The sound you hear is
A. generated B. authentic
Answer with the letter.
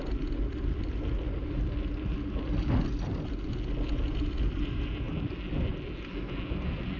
B